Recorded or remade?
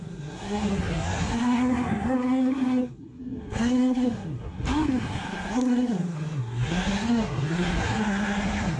remade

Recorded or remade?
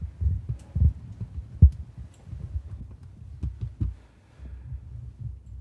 recorded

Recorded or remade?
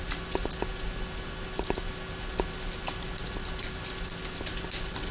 recorded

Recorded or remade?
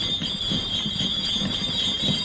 recorded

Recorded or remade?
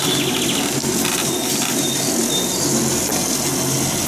recorded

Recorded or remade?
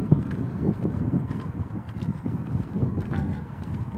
remade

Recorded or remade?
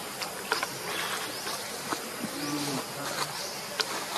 recorded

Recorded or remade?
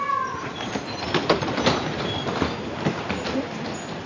recorded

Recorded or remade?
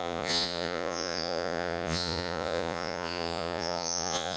remade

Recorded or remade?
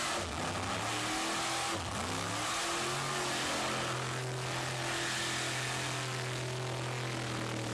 recorded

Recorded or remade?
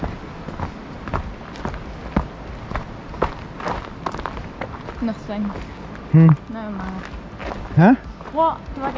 recorded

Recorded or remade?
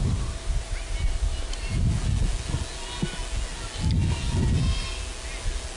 recorded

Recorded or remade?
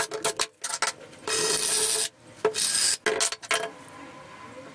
recorded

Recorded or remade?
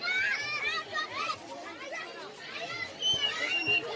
recorded